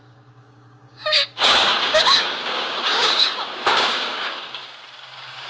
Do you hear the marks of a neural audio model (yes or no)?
yes